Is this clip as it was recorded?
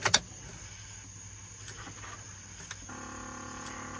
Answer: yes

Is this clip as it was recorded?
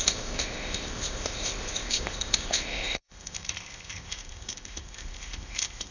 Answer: no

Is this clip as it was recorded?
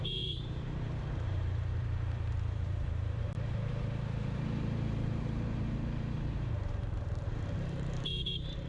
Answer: no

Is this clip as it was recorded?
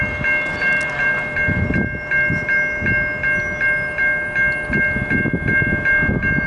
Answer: yes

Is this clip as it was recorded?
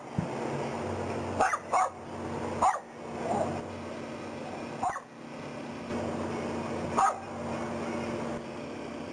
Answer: yes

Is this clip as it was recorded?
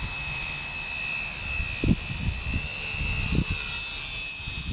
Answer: yes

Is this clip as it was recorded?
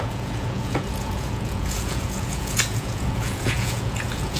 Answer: no